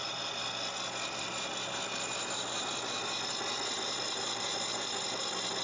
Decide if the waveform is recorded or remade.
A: recorded